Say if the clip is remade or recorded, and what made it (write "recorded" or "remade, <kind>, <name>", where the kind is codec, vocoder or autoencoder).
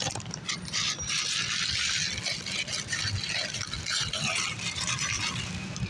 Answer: recorded